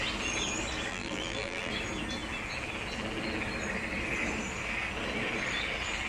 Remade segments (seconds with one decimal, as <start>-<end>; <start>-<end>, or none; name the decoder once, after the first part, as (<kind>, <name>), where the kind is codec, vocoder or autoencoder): 0.9-1.7 (vocoder, BigVGAN v2)